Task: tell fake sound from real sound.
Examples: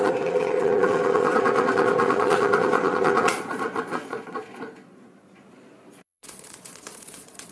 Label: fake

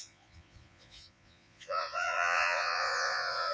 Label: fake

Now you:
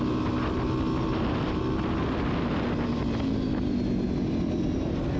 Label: real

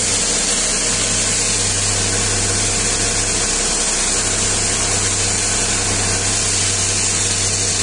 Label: real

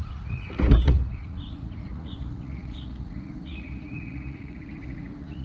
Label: fake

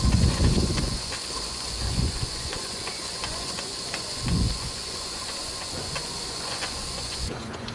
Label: fake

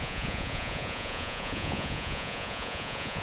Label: fake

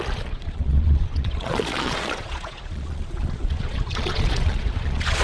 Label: fake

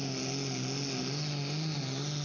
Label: real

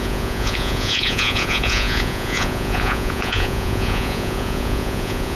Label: fake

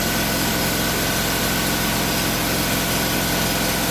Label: real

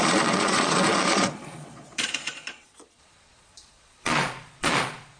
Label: fake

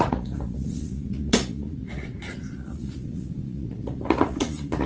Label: fake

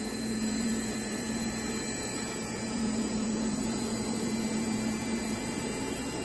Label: fake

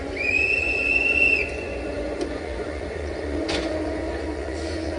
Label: fake